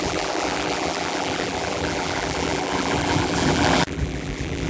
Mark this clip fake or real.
fake